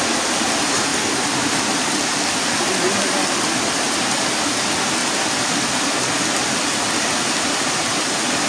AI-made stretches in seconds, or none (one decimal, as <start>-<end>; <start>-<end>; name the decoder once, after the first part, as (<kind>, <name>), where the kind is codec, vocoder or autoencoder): none